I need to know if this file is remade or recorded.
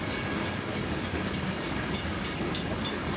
remade